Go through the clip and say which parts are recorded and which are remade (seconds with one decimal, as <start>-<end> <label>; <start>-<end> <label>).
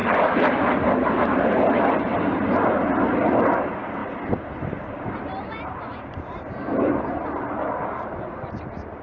0.0-0.8 remade; 0.8-4.0 recorded; 4.0-9.0 remade